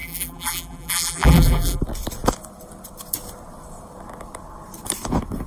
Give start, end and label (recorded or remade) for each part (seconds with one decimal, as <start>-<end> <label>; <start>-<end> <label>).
0.0-1.8 remade; 1.8-5.5 recorded